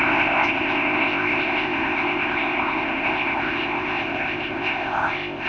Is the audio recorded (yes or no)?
no